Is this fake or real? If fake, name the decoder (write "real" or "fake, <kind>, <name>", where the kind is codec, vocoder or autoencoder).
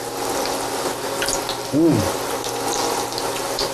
real